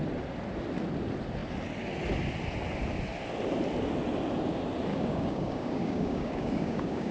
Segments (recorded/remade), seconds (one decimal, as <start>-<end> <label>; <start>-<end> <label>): 0.0-4.9 recorded; 4.9-7.1 remade